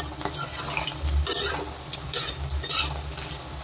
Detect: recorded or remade recorded